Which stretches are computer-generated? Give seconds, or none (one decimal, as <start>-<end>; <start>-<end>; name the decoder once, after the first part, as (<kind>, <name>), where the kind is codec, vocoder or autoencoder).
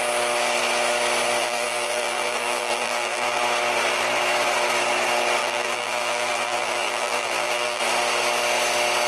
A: 1.4-3.4 (vocoder, BigVGAN v2); 5.4-7.8